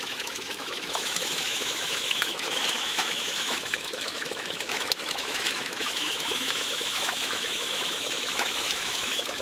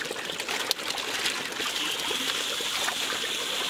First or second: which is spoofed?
first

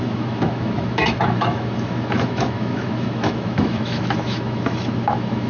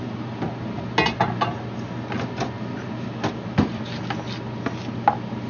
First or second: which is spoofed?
first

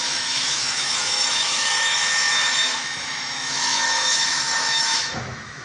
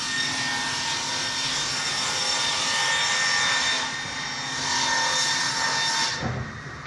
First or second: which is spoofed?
first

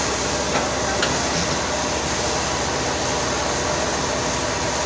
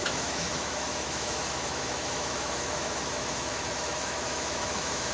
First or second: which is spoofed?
second